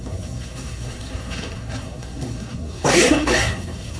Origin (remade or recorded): remade